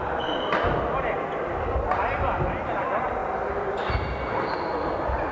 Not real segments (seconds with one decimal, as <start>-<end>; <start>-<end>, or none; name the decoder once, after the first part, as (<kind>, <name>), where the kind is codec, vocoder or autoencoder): none